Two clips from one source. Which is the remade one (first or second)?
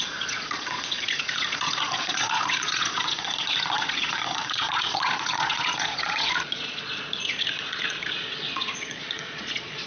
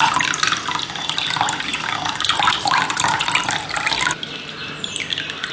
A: first